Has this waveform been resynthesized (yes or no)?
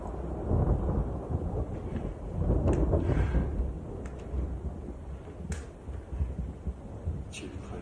no